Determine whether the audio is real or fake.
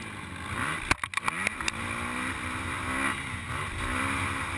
real